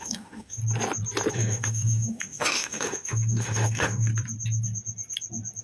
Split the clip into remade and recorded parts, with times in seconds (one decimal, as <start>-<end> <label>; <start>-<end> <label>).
0.0-0.6 remade; 0.6-1.3 recorded; 1.3-4.1 remade; 4.1-5.6 recorded